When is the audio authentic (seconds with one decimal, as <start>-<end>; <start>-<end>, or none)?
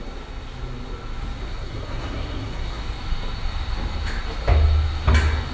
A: 0.0-1.4; 2.8-5.5